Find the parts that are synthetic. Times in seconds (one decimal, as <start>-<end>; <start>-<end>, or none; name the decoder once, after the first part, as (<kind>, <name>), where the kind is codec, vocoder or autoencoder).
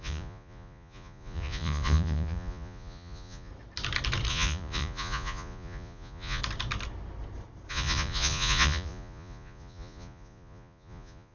0.0-3.5 (vocoder, Vocos); 4.3-6.4; 7.7-11.3